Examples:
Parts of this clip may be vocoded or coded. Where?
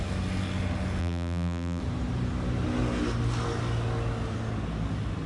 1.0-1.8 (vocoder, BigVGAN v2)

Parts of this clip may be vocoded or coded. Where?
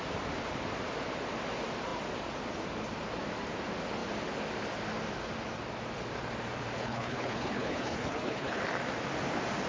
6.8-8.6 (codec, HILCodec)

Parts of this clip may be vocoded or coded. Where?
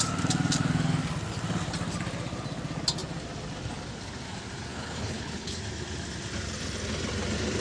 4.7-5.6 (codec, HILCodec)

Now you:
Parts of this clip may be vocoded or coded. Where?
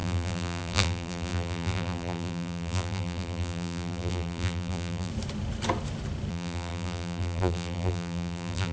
0.0-5.1 (vocoder, BigVGAN v2); 6.3-8.7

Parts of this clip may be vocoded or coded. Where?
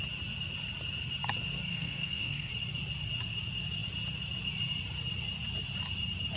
1.7-2.5 (codec, SNAC)